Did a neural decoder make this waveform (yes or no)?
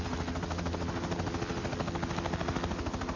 no